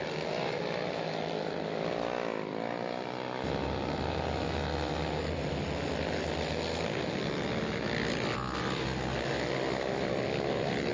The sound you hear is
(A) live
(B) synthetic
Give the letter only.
A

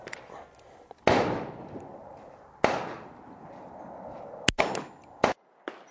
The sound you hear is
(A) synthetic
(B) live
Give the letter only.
B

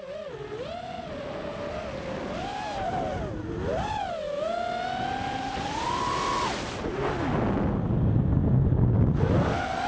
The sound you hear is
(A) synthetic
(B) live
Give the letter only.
B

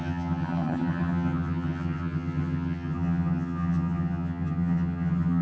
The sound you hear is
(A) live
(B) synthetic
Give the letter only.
B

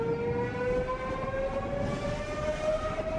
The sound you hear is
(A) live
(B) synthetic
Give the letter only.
A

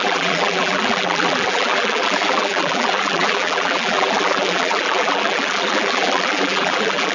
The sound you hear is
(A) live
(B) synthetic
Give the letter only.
B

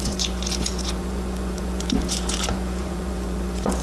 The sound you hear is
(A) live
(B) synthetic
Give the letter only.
B